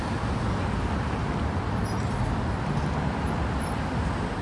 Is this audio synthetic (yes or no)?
no